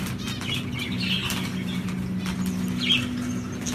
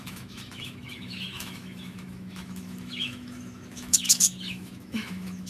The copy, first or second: second